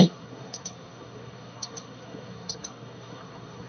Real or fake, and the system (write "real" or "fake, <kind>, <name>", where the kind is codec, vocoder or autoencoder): fake, codec, SNAC